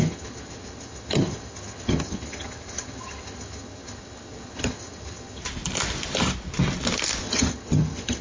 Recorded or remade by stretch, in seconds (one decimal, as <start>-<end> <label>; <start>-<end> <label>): 0.0-5.4 remade; 5.4-7.2 recorded; 7.2-8.2 remade